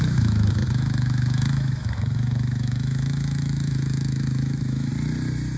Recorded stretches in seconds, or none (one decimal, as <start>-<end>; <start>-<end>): 4.9-5.6